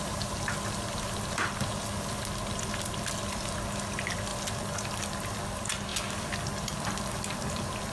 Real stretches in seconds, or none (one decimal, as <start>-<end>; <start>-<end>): 0.0-7.9